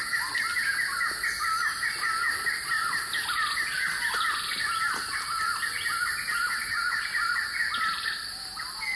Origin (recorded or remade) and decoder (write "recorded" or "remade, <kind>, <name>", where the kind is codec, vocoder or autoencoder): recorded